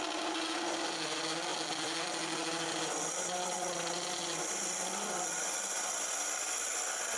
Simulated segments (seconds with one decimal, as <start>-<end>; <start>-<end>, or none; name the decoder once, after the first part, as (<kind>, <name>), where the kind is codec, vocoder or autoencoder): none